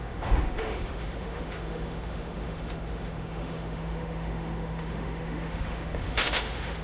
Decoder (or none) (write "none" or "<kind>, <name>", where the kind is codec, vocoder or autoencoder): autoencoder, DAC-VAE